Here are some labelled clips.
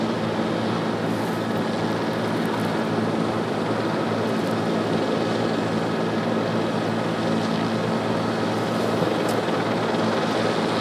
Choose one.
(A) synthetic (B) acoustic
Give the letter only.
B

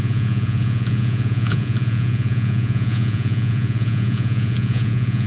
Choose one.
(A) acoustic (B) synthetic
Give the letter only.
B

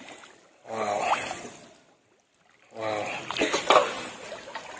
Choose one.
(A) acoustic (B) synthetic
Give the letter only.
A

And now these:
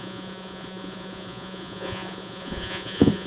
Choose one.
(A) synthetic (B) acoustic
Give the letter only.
A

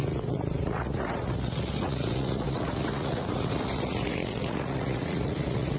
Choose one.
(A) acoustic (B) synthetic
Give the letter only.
B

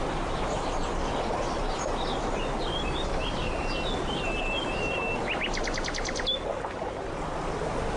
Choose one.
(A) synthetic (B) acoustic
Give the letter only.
B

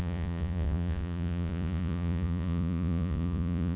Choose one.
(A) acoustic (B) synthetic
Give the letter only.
B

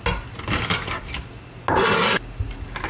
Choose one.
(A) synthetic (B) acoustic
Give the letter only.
B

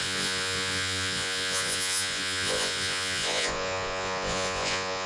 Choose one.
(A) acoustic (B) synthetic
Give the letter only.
B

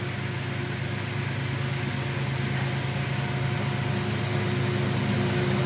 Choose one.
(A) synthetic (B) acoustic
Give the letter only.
B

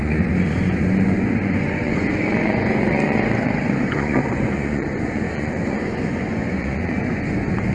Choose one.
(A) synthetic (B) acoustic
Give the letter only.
A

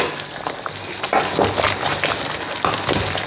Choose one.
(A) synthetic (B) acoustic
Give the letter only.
B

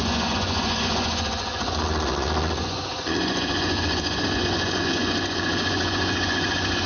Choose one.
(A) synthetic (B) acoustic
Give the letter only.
A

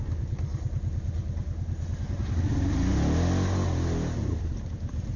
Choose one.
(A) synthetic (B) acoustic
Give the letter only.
B